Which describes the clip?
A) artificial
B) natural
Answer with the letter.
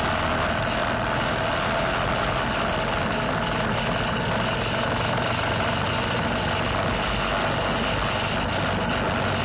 B